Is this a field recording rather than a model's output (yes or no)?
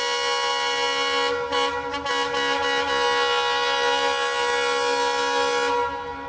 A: yes